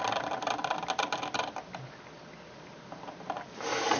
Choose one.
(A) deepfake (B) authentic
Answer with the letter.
B